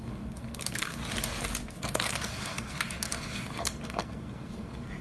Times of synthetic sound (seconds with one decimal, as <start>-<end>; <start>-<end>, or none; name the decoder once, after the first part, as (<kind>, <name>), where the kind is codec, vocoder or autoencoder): 0.0-1.0 (codec, SNAC); 1.7-5.0